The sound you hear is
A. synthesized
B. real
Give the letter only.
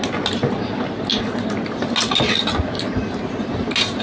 B